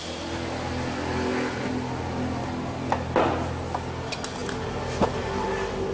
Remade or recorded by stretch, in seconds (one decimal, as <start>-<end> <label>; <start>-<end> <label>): 0.0-5.9 recorded